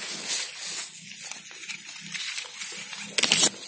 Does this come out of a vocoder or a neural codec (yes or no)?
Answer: no